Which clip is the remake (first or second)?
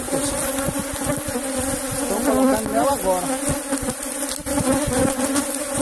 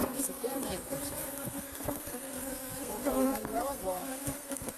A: second